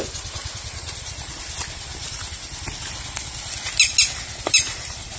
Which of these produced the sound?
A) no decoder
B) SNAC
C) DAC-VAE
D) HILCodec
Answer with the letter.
A